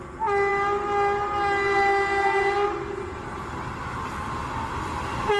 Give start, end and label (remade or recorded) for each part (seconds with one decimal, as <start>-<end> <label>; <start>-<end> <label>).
0.0-5.4 recorded